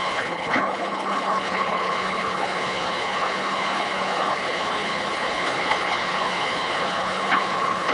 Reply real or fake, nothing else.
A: fake